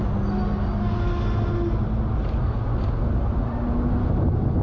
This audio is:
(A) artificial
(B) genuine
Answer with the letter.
B